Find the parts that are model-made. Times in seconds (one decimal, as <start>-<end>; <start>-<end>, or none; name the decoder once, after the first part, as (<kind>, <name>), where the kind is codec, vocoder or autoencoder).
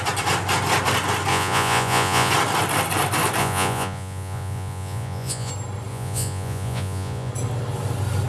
1.3-2.3 (vocoder, Vocos); 3.4-5.5; 5.9-7.3